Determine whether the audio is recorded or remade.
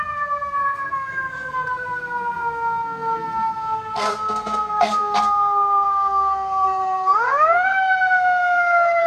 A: remade